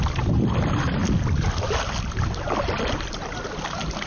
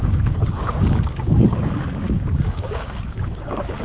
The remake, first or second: second